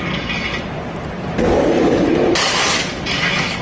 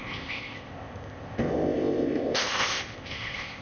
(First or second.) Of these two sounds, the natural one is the first